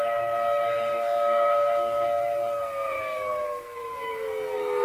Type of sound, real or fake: fake